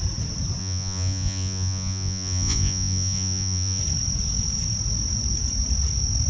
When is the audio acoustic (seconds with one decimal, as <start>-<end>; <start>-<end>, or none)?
0.0-0.6; 3.8-6.3